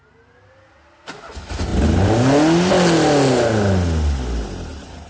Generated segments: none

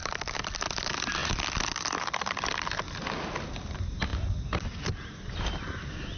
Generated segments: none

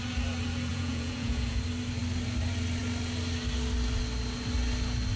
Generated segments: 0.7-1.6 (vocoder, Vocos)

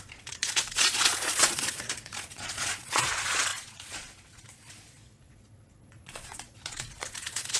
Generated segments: 0.0-7.6 (vocoder, Vocos)

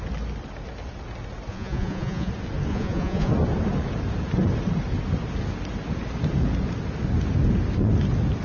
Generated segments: 1.5-2.3 (vocoder, Vocos); 2.7-3.3